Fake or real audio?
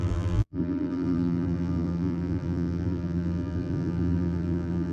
fake